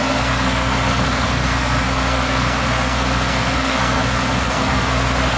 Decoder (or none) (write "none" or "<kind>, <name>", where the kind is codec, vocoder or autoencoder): codec, SNAC